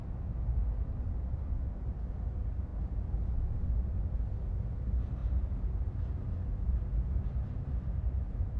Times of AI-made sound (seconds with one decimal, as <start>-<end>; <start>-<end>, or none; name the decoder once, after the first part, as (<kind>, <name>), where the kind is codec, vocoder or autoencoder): none